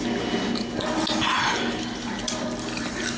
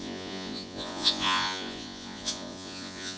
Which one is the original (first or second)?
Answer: first